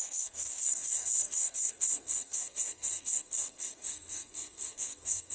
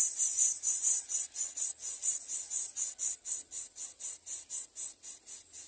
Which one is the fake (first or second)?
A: first